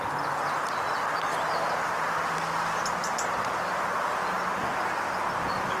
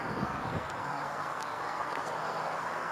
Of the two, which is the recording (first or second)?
first